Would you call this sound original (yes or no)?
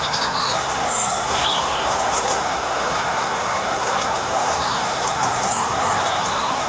no